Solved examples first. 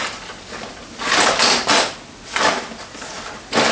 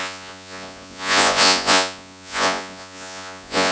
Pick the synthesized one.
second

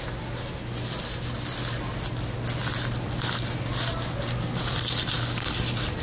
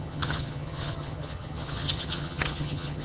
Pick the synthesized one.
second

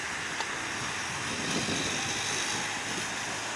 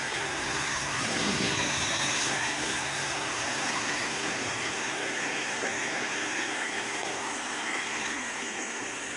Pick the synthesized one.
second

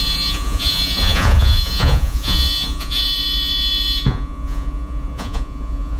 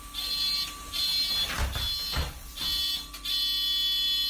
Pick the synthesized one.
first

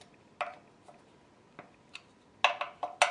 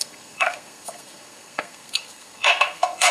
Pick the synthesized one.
second